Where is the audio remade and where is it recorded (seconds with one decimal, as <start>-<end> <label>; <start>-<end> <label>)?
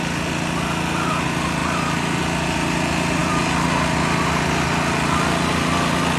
0.0-1.6 recorded; 1.6-2.2 remade; 2.2-3.2 recorded; 3.2-6.2 remade